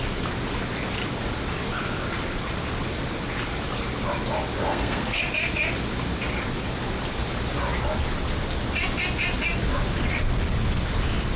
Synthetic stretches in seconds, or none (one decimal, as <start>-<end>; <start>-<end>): 4.6-5.2